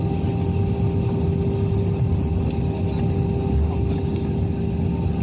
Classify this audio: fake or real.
real